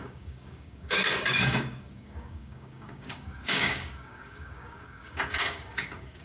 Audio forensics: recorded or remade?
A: remade